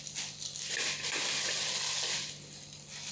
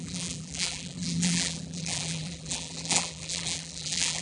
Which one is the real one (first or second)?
first